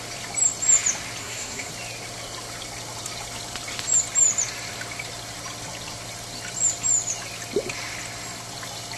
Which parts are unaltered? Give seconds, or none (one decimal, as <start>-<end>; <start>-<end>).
0.0-1.2; 1.7-9.0